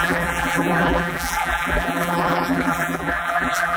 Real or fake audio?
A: fake